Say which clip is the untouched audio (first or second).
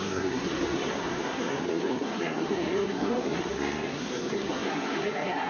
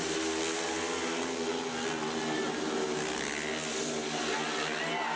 second